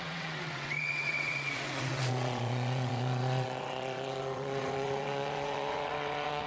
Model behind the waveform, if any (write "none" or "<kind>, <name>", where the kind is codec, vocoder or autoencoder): vocoder, WaveNeXt